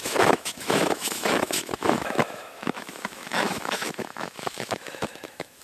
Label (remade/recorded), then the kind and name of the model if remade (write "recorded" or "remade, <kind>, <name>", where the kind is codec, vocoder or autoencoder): remade, autoencoder, DAC-VAE